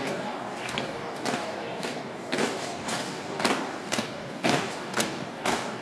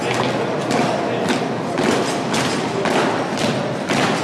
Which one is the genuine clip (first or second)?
second